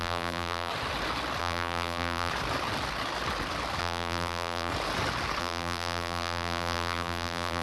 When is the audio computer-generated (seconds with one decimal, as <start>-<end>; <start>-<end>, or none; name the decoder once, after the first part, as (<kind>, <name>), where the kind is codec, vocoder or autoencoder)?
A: 0.0-0.7 (vocoder, BigVGAN v2); 1.4-2.3; 3.8-4.7; 5.4-7.6